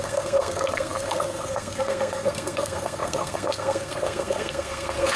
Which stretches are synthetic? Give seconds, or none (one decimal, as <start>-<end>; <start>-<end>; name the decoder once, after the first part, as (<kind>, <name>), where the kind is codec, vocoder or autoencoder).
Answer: 0.0-5.2 (codec, SNAC)